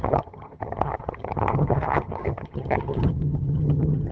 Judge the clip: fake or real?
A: fake